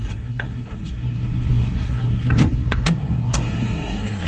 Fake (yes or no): yes